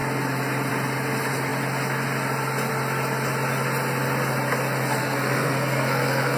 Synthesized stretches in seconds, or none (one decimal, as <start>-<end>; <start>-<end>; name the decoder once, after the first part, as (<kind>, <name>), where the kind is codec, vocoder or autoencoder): 5.0-6.4 (codec, SNAC)